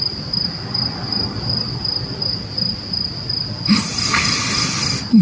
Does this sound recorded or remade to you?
recorded